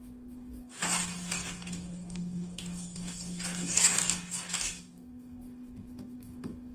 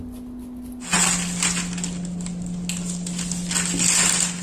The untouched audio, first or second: second